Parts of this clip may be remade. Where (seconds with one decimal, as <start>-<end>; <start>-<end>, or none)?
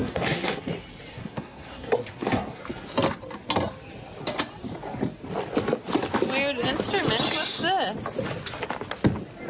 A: 0.0-0.7; 1.1-2.6